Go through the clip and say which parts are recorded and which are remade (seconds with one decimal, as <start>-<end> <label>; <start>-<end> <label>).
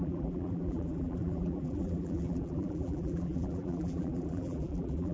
0.0-5.1 remade